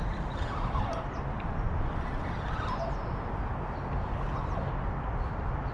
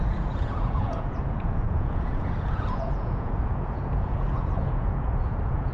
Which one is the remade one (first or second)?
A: second